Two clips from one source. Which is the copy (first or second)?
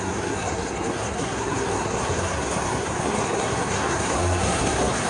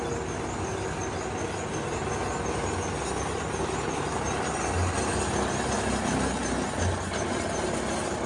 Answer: first